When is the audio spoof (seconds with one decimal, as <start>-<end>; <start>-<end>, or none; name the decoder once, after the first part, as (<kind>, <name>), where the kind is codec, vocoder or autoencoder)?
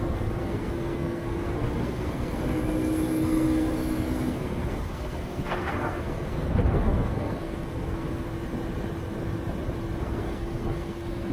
0.0-8.3 (codec, SNAC); 10.0-11.3